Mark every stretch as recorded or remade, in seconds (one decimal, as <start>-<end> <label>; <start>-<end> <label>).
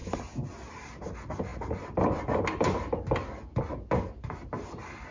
0.0-5.1 recorded